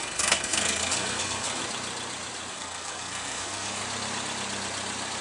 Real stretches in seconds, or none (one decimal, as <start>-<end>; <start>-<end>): 1.6-2.5; 3.8-5.2